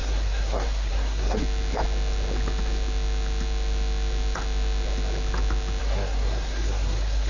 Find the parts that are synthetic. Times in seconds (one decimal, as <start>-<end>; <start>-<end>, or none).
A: 0.0-1.4; 5.8-7.3